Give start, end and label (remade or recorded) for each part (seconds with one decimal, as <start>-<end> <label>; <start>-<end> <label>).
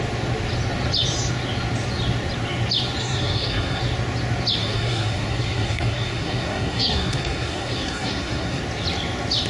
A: 0.0-3.0 recorded; 3.0-3.8 remade; 3.8-4.6 recorded; 4.6-8.6 remade; 8.6-9.5 recorded